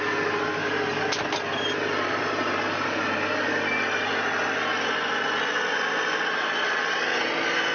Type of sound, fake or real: real